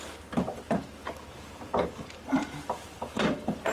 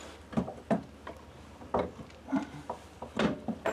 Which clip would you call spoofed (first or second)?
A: first